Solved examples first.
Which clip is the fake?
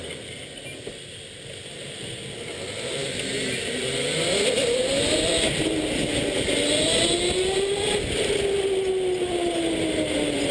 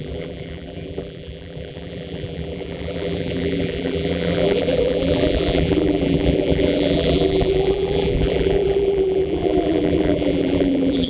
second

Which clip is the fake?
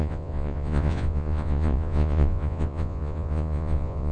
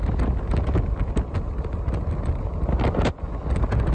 first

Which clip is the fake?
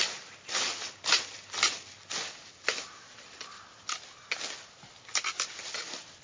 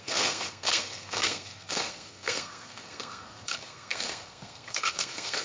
second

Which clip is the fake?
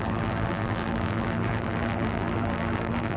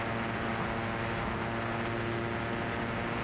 first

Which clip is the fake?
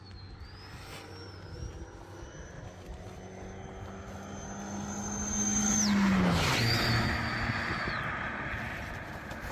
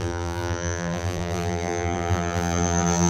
second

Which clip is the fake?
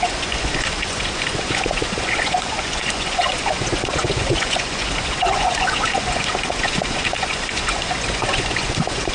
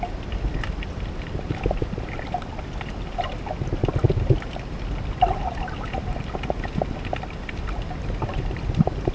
first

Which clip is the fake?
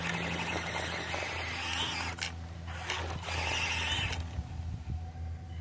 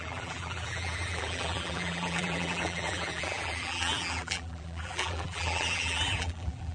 second